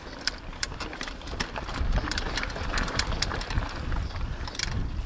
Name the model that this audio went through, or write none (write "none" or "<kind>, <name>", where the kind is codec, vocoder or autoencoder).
vocoder, BigVGAN v2